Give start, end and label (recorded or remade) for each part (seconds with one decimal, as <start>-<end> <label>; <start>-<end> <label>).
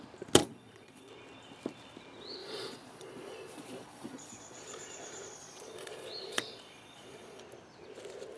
0.0-0.4 recorded; 0.4-1.1 remade; 1.1-2.4 recorded; 2.4-7.4 remade; 7.4-8.4 recorded